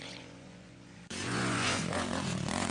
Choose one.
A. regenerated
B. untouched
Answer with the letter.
A